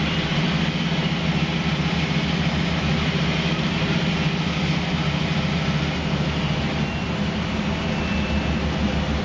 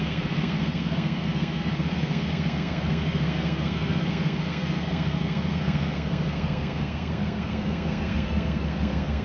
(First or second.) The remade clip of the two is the second